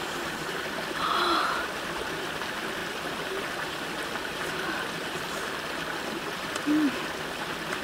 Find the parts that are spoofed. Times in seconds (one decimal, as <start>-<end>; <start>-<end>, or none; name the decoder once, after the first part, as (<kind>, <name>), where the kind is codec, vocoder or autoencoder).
none